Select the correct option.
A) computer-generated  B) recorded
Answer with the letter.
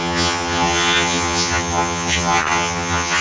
A